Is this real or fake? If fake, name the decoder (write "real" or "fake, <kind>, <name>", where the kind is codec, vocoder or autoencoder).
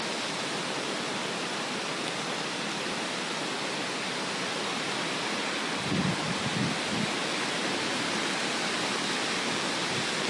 real